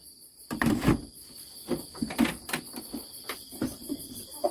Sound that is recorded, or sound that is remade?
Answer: recorded